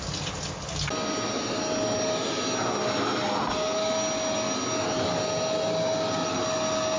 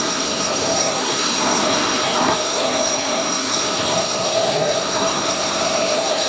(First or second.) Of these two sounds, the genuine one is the first